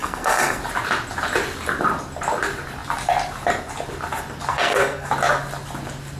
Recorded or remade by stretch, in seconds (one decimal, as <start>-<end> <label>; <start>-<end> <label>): 0.0-0.6 remade; 0.6-4.5 recorded; 4.5-5.1 remade; 5.1-6.2 recorded